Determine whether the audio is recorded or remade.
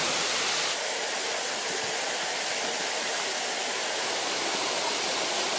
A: remade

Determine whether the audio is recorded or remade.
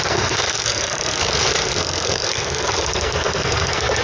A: remade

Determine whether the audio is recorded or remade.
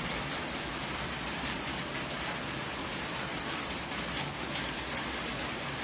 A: recorded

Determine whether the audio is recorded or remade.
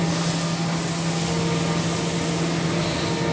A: recorded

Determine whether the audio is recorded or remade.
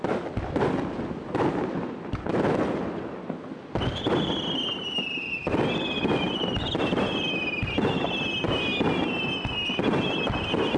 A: recorded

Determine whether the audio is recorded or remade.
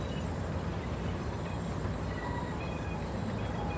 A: remade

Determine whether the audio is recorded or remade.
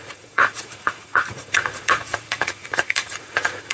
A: remade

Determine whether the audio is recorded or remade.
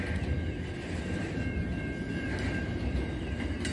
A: recorded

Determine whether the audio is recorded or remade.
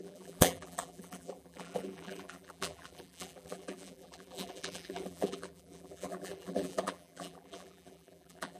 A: remade